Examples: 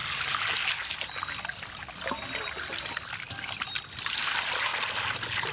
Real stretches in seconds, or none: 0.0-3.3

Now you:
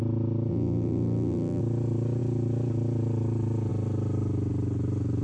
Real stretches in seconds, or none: 0.0-0.5; 1.6-5.2

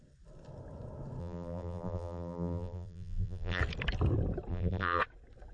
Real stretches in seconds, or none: 0.0-1.2; 3.6-4.5; 5.0-5.5

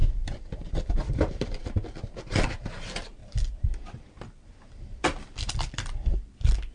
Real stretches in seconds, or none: 2.1-3.2; 6.2-6.7

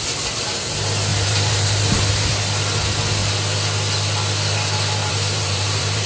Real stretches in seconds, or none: 0.0-1.1; 2.0-5.0

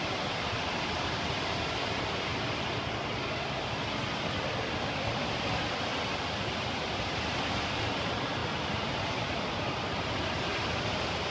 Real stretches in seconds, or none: 2.3-4.6; 8.4-9.1

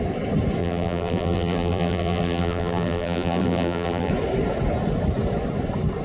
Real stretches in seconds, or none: 0.0-0.6; 4.1-6.0

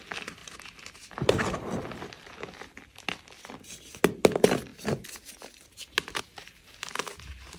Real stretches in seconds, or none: 0.0-7.6